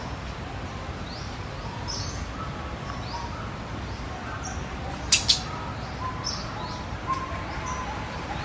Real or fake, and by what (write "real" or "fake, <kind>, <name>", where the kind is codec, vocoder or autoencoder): real